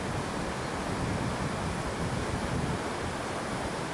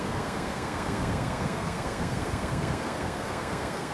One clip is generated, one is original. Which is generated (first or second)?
second